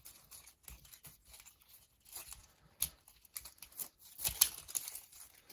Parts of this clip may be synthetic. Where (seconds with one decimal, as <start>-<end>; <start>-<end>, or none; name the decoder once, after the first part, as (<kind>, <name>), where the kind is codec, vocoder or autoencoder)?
2.4-4.1 (vocoder, BigVGAN v2)